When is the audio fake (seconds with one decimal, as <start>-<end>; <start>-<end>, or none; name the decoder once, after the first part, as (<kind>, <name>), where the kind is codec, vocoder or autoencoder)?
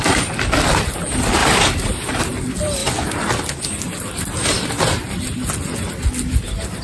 1.4-2.2 (vocoder, BigVGAN v2)